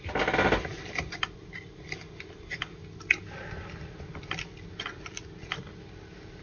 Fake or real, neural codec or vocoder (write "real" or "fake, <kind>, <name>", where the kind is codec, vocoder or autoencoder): real